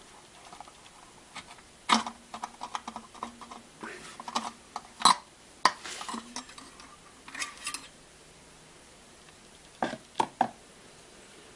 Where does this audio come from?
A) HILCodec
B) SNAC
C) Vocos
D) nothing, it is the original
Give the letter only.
D